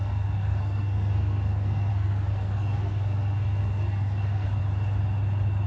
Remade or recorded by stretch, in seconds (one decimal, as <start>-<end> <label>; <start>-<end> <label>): 0.0-4.6 remade; 4.6-5.7 recorded